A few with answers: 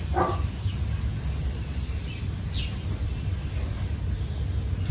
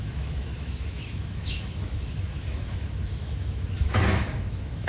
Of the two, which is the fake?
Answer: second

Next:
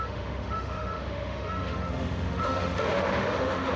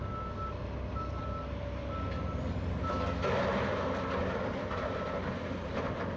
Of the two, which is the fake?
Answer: first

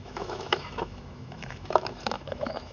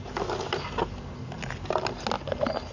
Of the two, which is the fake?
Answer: first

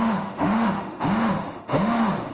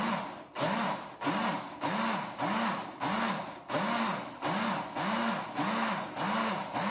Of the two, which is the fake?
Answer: first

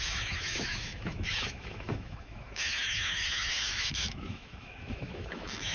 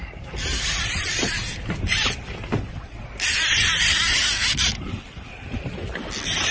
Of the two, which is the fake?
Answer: first